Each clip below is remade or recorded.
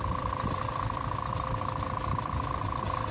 recorded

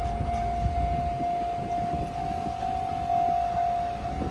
recorded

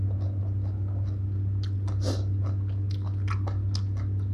recorded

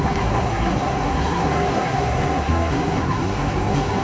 remade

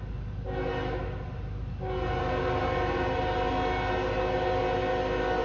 recorded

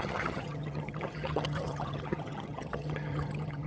remade